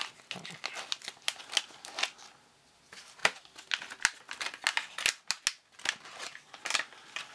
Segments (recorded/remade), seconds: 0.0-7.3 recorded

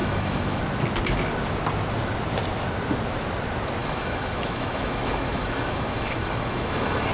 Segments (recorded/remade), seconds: 0.0-0.6 remade; 0.6-3.8 recorded; 3.8-7.1 remade

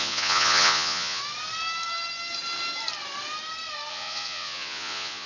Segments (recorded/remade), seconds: 0.0-1.2 remade; 1.2-3.9 recorded; 3.9-5.3 remade

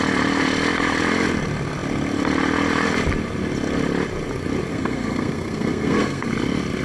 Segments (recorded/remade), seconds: 0.0-4.7 recorded; 4.7-6.3 remade; 6.3-6.8 recorded